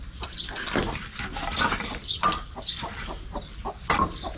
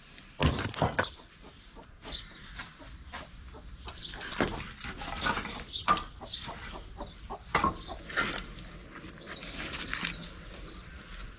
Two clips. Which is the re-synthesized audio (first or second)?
first